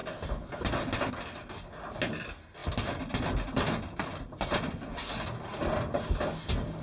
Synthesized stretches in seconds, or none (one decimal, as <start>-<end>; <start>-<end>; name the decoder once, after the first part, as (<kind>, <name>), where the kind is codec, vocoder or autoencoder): none